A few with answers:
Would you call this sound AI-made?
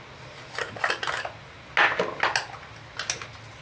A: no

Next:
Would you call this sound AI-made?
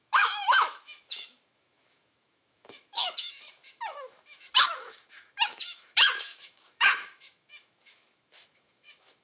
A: yes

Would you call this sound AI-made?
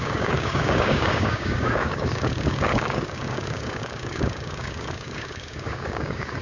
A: yes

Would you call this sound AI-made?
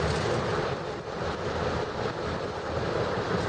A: no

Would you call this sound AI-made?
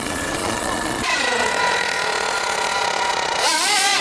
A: yes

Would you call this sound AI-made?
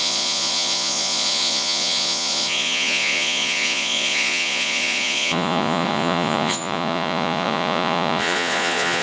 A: yes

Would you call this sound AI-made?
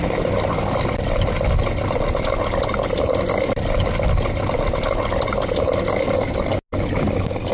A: no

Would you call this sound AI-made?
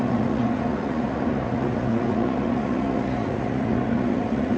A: yes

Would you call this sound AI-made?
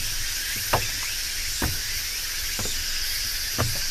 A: no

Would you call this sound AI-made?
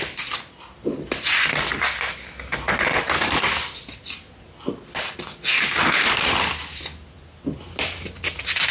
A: no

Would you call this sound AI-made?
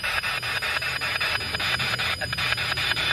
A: yes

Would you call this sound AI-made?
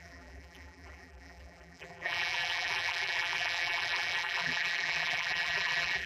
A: yes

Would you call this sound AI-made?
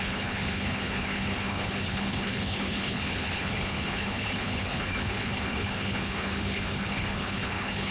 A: yes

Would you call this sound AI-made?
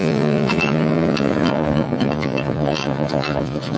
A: yes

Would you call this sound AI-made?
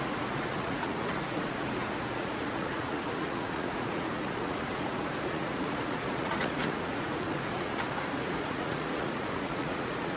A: yes